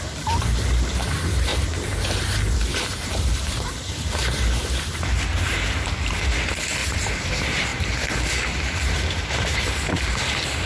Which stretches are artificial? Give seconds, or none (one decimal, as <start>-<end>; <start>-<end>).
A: 1.5-2.2; 2.7-5.2; 6.8-7.3; 7.7-8.3